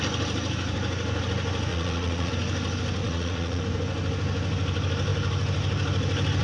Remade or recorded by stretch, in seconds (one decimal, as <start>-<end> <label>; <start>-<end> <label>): 0.0-1.7 recorded; 1.7-2.3 remade; 2.3-3.0 recorded; 3.0-3.6 remade; 3.6-6.4 recorded